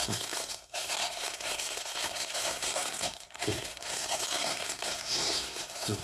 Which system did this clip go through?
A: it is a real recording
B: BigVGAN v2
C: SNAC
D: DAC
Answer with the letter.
C